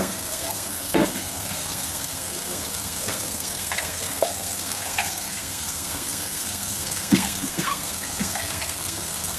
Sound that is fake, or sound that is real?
fake